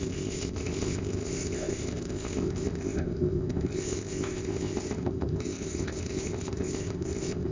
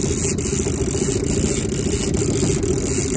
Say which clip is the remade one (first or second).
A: first